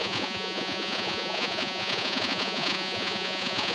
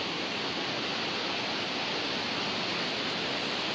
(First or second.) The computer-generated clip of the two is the first